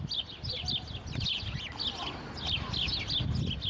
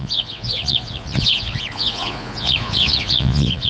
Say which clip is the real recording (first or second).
first